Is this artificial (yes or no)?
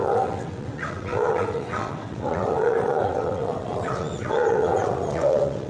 yes